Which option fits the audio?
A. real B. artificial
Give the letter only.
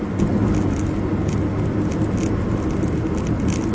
A